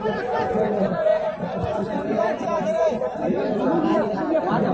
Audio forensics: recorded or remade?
remade